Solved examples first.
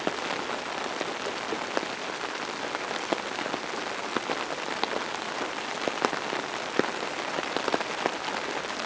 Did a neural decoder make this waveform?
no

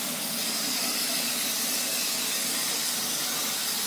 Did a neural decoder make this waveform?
yes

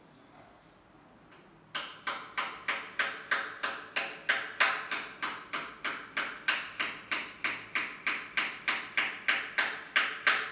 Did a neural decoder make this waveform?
no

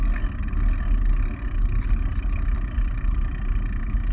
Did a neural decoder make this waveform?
no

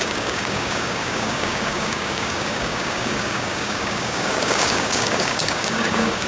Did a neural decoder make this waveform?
yes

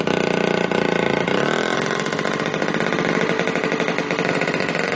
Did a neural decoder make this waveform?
no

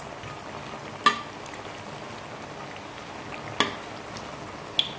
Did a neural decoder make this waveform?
no